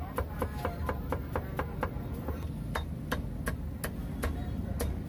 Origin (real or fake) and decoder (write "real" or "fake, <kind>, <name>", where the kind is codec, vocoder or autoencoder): real